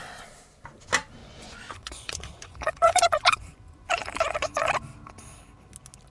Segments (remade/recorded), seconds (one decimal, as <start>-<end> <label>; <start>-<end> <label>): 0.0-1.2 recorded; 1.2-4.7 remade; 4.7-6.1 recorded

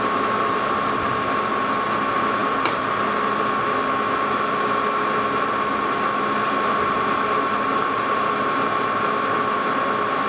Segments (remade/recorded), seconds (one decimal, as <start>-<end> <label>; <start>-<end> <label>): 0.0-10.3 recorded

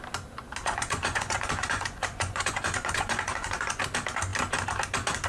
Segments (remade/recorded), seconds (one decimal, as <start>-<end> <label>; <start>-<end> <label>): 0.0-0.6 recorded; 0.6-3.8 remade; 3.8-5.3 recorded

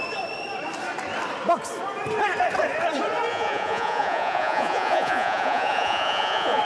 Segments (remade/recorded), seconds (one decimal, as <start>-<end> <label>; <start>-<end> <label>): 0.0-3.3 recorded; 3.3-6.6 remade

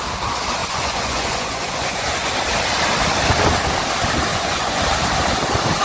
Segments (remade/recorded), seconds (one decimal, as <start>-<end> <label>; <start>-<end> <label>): 0.0-0.6 recorded; 0.6-2.3 remade; 2.3-4.3 recorded; 4.3-4.8 remade; 4.8-5.8 recorded